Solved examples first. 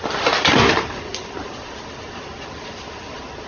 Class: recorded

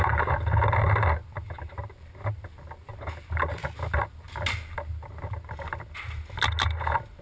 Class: recorded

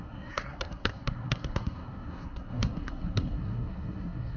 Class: remade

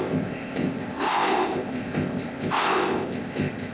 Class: remade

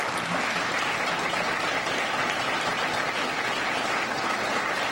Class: recorded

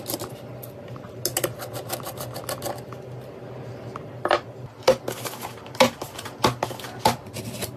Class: recorded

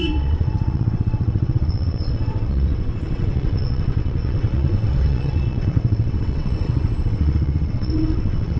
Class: remade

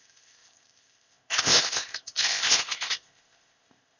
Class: remade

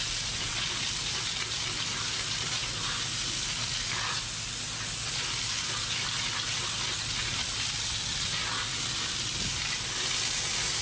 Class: recorded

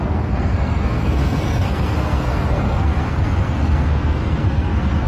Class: remade